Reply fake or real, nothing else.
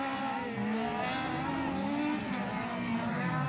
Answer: real